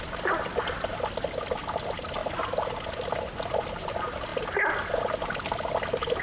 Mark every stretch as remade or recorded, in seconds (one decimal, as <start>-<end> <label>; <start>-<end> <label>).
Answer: 0.0-6.2 recorded